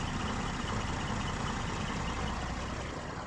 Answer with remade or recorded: recorded